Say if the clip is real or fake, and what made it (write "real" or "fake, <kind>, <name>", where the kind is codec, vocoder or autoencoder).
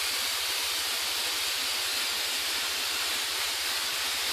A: real